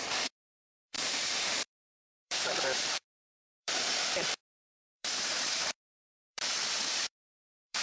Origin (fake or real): fake